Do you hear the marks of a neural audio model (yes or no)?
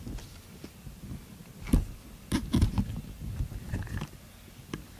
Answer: no